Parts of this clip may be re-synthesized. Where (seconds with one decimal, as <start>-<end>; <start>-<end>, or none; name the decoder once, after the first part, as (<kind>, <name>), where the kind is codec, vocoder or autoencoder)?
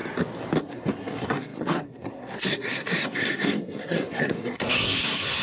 0.6-5.4 (codec, SNAC)